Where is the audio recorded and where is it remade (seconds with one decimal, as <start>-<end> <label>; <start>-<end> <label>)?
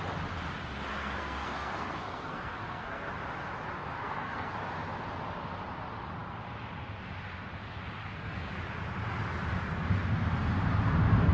0.0-0.9 recorded; 0.9-3.1 remade; 3.1-3.8 recorded; 3.8-4.5 remade; 4.5-8.0 recorded; 8.0-8.5 remade; 8.5-11.3 recorded